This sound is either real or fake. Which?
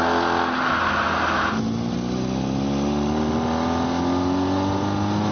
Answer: real